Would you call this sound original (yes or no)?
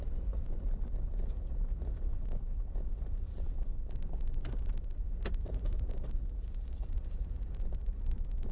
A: yes